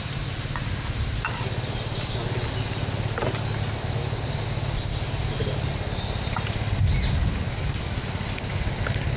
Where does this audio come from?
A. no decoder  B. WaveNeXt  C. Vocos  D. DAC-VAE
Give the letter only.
A